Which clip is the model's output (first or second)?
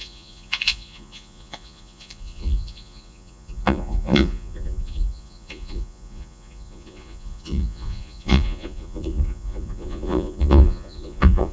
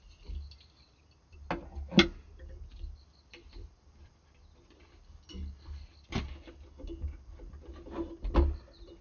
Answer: first